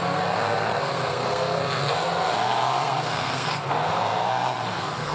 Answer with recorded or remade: remade